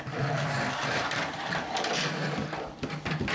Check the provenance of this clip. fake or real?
fake